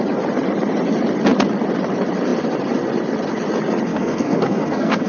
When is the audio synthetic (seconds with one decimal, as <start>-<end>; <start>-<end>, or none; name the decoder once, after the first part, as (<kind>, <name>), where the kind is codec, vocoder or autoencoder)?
3.9-5.1 (codec, SNAC)